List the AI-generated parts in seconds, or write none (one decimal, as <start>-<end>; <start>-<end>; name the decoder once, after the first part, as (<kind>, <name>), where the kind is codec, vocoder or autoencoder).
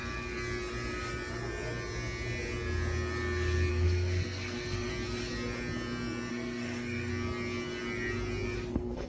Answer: 3.7-4.9 (codec, SNAC); 6.3-7.1; 8.7-9.1